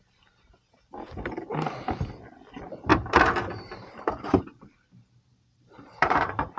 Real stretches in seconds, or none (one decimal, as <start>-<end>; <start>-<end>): 0.0-2.9